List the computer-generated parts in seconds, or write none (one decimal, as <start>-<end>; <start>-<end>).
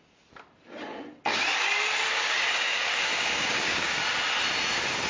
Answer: 2.1-4.0